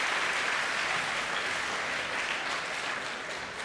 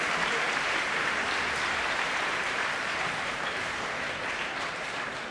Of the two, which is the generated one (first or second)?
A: second